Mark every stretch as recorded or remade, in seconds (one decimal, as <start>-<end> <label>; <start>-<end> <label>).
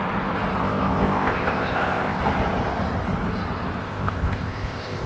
0.0-0.6 recorded; 0.6-2.2 remade; 2.2-3.8 recorded; 3.8-5.1 remade